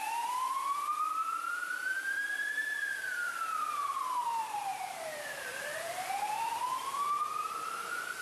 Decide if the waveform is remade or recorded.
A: remade